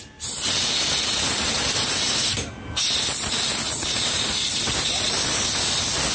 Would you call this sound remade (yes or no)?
no